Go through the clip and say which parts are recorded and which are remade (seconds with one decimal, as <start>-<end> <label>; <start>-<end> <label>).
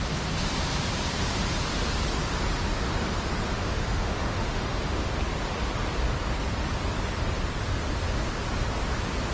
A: 0.0-3.5 recorded; 3.5-5.1 remade; 5.1-9.3 recorded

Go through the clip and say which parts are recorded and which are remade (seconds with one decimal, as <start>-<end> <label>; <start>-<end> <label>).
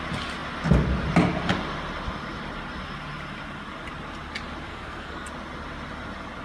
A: 0.0-4.7 recorded; 4.7-5.3 remade; 5.3-6.4 recorded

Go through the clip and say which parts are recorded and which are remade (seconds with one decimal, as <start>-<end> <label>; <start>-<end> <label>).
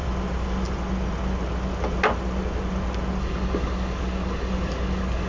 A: 0.0-3.2 recorded; 3.2-5.3 remade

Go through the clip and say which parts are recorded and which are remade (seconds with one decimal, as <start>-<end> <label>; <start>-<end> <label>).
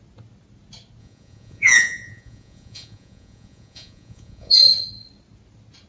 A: 0.0-1.0 recorded; 1.0-4.5 remade; 4.5-5.9 recorded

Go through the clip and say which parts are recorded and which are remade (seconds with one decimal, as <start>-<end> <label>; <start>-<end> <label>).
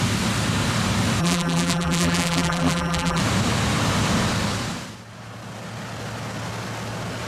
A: 0.0-1.2 recorded; 1.2-3.2 remade; 3.2-7.3 recorded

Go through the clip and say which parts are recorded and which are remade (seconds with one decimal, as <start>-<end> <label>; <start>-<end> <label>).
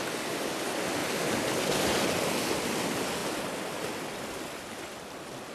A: 0.0-5.5 recorded